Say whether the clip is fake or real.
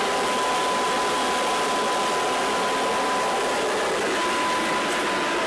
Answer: real